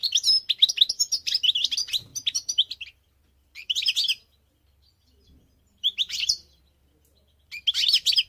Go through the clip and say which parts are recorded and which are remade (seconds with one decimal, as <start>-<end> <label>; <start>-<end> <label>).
0.0-2.1 recorded; 2.1-6.6 remade; 6.6-8.3 recorded